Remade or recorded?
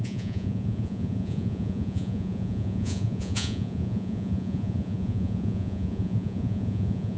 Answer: remade